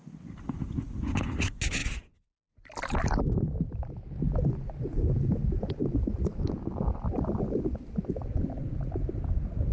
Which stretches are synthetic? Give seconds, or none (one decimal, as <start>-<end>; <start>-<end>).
none